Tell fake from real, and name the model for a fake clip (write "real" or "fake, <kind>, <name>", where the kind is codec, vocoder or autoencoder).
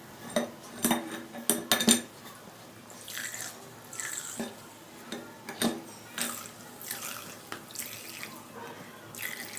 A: real